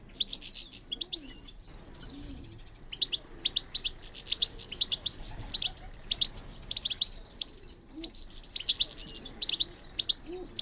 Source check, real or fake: real